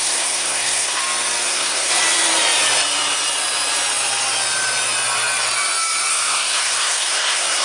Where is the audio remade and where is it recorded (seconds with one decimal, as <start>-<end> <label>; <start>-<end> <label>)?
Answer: 0.0-1.0 remade; 1.0-1.5 recorded; 1.5-1.9 remade; 1.9-6.1 recorded; 6.1-7.6 remade